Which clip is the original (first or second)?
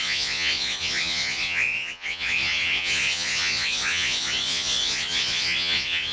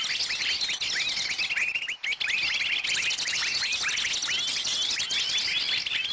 second